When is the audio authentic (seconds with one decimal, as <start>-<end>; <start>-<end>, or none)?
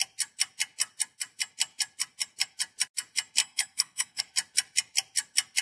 0.0-3.4; 4.2-5.6